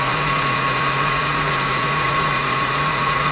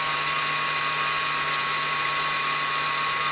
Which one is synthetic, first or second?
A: first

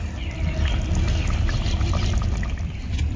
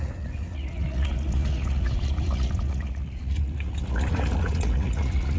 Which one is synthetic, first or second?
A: second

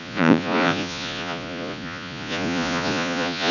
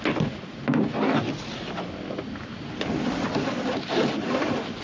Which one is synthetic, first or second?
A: first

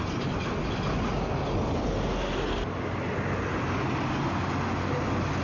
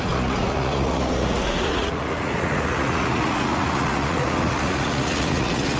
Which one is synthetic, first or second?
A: second